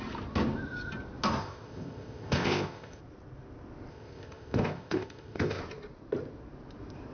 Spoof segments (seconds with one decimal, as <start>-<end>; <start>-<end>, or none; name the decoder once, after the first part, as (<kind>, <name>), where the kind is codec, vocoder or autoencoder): 1.4-3.0 (codec, ZipCodec); 3.9-5.6